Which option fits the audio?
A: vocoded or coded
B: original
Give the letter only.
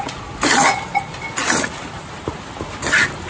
B